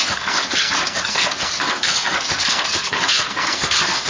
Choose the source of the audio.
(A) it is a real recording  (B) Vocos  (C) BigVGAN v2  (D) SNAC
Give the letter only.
D